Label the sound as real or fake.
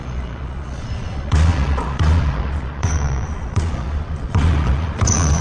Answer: fake